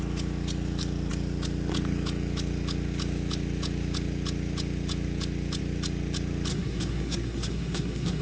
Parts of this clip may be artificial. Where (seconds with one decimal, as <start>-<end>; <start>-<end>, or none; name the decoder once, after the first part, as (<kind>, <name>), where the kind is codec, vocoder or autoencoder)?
6.5-8.2 (codec, SNAC)